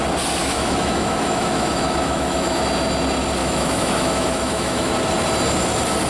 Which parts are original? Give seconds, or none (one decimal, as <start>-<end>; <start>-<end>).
0.0-0.4; 2.6-3.4; 4.9-6.1